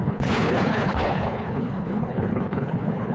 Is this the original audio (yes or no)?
no